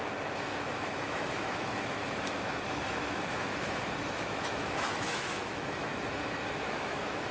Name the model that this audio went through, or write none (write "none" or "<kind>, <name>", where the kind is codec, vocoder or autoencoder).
autoencoder, DAC-VAE